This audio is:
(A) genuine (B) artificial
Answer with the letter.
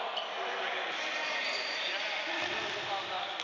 A